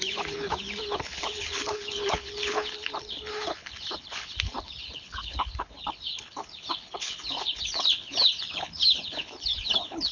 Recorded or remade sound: remade